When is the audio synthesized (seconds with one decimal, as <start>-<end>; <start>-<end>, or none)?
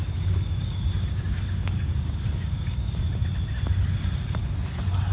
0.0-3.1